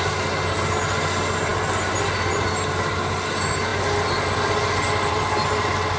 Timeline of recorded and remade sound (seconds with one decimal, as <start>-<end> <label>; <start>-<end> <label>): 0.0-6.0 recorded